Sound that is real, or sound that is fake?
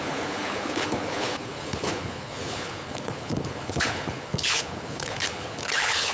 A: fake